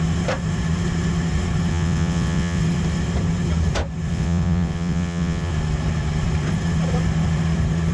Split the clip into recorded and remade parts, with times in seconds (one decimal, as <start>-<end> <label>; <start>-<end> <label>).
0.0-1.7 recorded; 1.7-2.6 remade; 2.6-4.1 recorded; 4.1-5.5 remade; 5.5-7.9 recorded